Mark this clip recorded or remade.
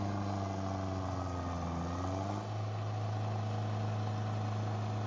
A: recorded